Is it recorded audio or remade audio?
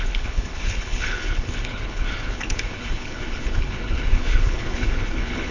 remade